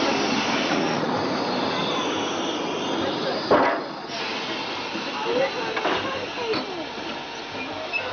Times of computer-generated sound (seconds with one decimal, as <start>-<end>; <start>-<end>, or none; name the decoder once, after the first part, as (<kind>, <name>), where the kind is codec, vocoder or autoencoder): 0.6-1.1 (vocoder, Vocos)